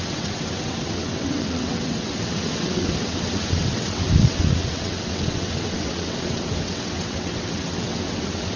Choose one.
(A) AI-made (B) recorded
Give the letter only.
A